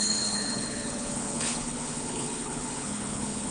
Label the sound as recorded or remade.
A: remade